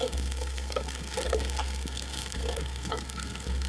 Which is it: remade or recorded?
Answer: remade